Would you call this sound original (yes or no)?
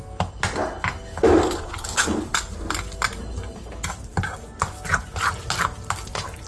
yes